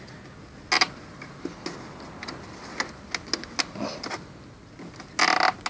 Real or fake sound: real